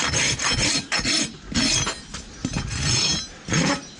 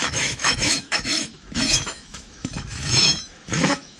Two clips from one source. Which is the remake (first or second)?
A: second